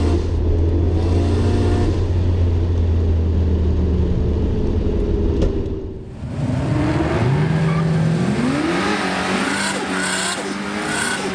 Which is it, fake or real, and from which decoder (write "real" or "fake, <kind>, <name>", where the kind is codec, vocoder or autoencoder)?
real